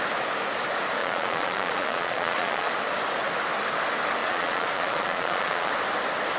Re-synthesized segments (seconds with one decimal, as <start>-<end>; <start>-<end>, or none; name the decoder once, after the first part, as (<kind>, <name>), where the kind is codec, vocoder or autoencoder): 1.0-2.7 (vocoder, Vocos); 4.2-5.7